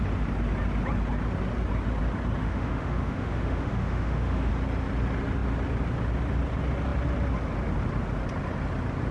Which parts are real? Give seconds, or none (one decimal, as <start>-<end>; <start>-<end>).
0.0-2.4; 4.5-9.1